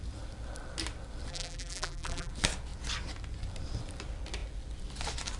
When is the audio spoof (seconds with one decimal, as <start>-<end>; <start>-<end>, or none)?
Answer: 1.3-2.3